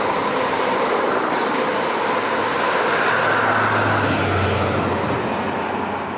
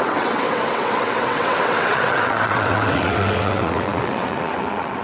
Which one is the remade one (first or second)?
second